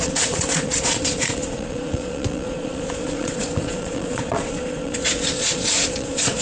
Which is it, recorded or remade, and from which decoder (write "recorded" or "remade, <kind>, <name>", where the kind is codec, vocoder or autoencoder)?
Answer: remade, vocoder, Vocos